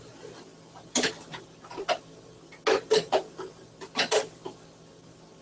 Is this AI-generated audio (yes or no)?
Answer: no